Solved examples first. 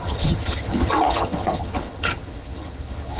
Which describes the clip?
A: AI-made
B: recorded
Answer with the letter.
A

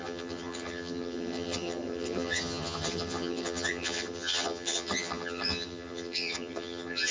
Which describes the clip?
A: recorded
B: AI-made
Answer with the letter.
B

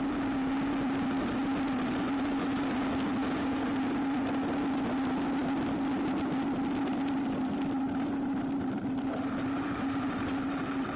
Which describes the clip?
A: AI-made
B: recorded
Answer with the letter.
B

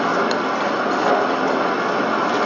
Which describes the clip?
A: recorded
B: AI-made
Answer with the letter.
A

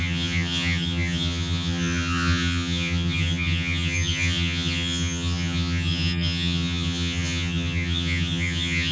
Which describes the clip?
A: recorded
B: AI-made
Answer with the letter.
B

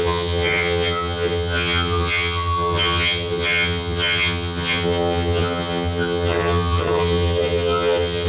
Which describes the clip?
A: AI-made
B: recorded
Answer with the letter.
A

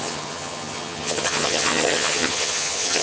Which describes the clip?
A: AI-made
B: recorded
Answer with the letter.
A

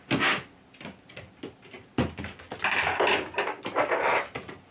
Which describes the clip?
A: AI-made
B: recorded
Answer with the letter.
B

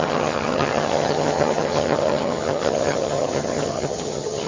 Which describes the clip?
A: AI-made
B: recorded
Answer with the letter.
A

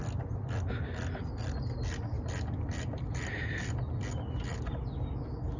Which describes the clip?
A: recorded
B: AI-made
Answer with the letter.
A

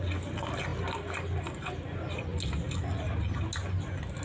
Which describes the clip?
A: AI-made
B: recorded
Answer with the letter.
B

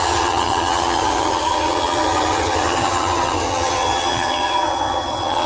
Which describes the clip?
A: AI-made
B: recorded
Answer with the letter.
A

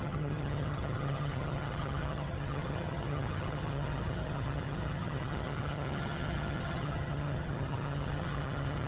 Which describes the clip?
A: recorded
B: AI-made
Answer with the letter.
B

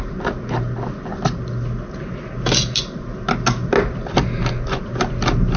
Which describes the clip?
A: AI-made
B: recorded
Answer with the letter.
B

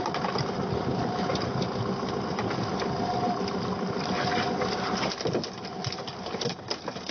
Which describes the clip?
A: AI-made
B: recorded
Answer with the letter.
B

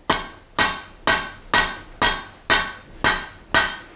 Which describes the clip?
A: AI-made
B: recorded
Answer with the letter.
B